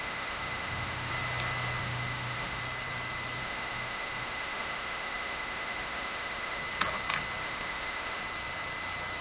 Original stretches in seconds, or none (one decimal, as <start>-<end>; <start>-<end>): 1.1-1.8; 2.6-3.4; 6.6-7.4; 8.2-9.2

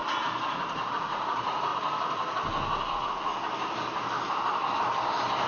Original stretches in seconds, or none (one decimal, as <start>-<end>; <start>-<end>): 0.0-0.9; 1.7-2.9; 3.3-5.5

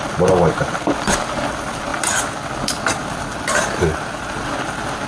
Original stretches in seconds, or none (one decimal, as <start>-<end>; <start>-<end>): 0.0-5.1

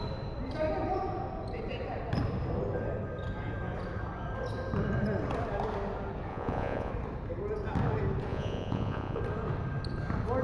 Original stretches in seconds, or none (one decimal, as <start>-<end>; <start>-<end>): 0.0-6.3; 6.9-8.3; 9.2-10.4

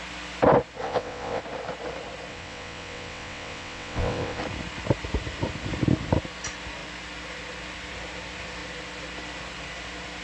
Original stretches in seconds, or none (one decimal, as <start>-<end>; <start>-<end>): 0.0-0.8; 1.4-2.3; 4.4-10.2